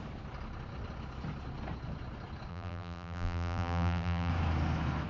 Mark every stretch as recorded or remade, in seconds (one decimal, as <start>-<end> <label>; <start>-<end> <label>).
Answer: 0.0-2.5 recorded; 2.5-4.3 remade; 4.3-5.1 recorded